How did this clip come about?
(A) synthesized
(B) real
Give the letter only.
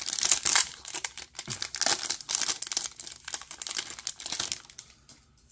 B